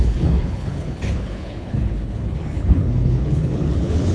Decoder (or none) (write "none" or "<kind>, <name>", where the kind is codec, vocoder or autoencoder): codec, HILCodec